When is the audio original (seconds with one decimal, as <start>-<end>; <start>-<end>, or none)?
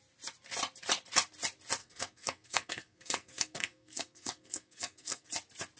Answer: 0.0-1.8; 5.3-5.8